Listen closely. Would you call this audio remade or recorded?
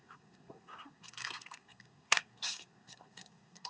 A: remade